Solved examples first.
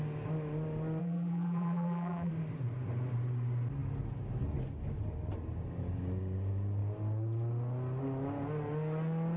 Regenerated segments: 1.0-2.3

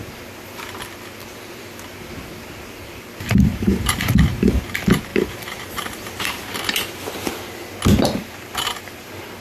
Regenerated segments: 3.5-4.6; 5.1-7.3

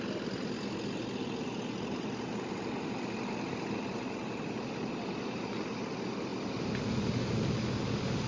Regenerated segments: none

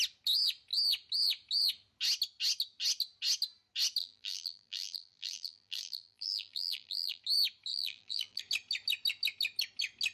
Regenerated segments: 4.0-7.2; 7.7-8.4

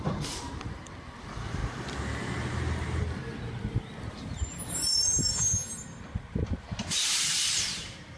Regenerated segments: 0.0-1.6; 4.1-4.9; 6.6-8.2